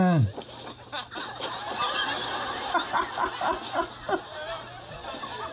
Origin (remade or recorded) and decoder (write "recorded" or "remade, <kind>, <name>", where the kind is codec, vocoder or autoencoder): recorded